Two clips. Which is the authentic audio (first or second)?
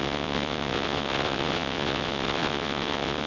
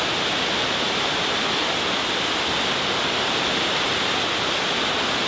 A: second